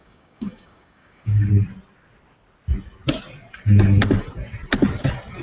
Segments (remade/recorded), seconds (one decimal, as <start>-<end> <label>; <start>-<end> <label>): 0.0-1.5 remade; 1.5-5.4 recorded